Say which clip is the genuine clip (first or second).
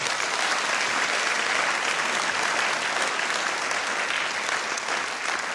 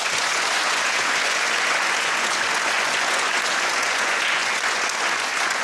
first